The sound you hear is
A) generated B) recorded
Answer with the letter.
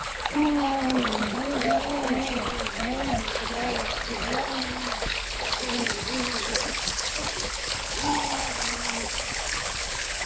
A